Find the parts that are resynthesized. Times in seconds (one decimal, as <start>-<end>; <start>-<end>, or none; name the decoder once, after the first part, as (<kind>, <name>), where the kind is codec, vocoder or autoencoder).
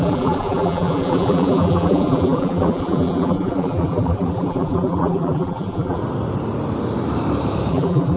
0.0-6.0 (vocoder, BigVGAN v2); 7.7-8.2